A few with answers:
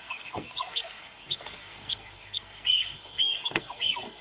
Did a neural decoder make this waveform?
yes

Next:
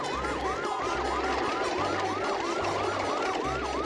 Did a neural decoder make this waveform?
no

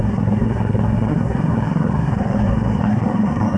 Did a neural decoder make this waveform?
yes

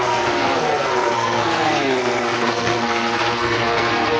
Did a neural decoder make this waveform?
yes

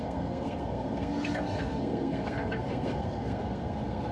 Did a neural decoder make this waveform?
yes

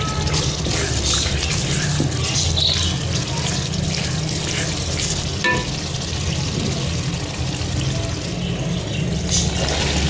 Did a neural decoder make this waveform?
no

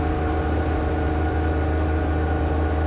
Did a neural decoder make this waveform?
no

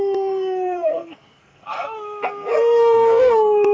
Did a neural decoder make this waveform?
yes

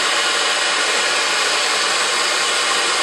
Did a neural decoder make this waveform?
no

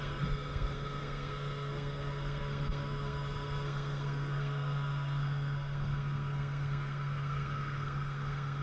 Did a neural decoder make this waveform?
yes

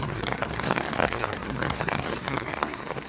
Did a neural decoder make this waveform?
yes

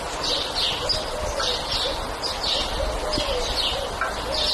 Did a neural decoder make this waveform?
no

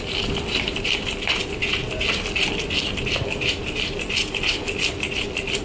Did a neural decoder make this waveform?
no